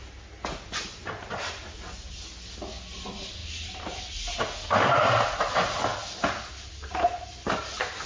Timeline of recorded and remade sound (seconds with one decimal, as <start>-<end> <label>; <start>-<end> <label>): 0.0-8.1 recorded

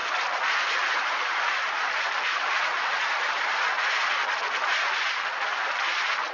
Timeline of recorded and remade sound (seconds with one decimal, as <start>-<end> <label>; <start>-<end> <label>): 0.0-6.3 recorded